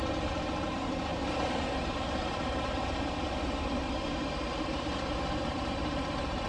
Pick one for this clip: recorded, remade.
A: remade